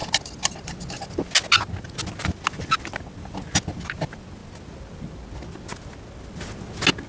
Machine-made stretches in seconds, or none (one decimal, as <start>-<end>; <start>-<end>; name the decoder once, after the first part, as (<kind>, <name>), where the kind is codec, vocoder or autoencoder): none